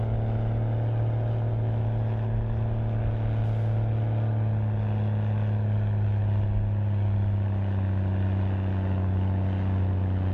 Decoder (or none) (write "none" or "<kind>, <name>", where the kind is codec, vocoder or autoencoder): none